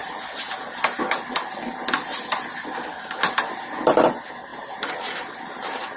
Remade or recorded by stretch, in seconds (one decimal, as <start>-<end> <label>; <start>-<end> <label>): 0.0-4.5 recorded; 4.5-6.0 remade

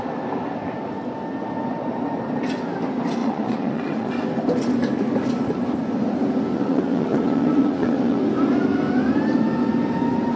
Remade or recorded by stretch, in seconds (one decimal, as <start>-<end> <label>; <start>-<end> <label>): 0.0-3.2 recorded; 3.2-4.1 remade; 4.1-6.5 recorded; 6.5-8.2 remade; 8.2-10.4 recorded

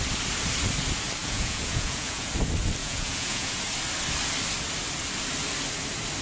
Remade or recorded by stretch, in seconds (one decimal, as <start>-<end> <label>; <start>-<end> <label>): 0.0-1.2 recorded; 1.2-2.3 remade; 2.3-2.8 recorded; 2.8-3.6 remade; 3.6-6.2 recorded

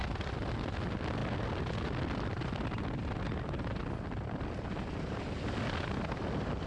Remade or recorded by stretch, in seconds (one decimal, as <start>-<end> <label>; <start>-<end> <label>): 0.0-6.7 recorded